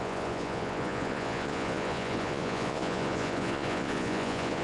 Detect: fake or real fake